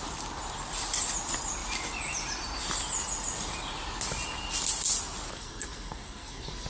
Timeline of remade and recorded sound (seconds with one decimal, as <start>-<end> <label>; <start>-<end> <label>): 0.0-5.3 recorded; 5.3-6.7 remade